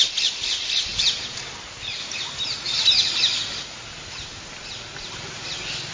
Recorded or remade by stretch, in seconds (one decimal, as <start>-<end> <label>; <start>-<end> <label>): 0.0-0.9 recorded; 0.9-1.4 remade; 1.4-5.9 recorded